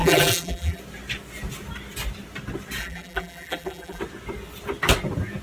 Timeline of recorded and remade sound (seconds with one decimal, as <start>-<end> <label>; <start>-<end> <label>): 0.0-0.8 remade; 0.8-2.8 recorded; 2.8-4.0 remade; 4.0-5.4 recorded